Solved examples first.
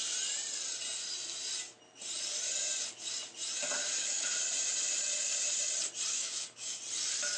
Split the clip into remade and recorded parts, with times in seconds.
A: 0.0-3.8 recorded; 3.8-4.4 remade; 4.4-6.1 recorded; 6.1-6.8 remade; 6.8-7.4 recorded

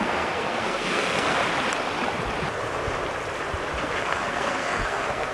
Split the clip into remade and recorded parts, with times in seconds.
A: 0.0-1.4 remade; 1.4-3.8 recorded; 3.8-5.3 remade

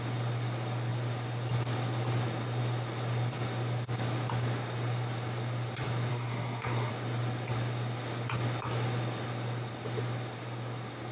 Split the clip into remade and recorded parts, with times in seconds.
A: 0.0-6.1 recorded; 6.1-6.9 remade; 6.9-11.1 recorded

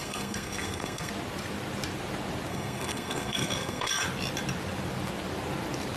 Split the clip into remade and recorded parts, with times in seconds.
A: 0.0-1.1 remade; 1.1-2.5 recorded; 2.5-3.9 remade; 3.9-6.0 recorded

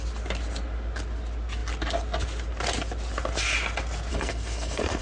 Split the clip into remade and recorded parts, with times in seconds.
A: 0.0-4.1 recorded; 4.1-5.0 remade